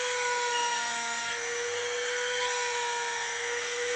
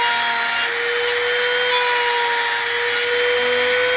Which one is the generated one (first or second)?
first